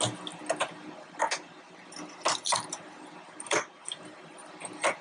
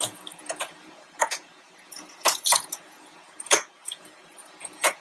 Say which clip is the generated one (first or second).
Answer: second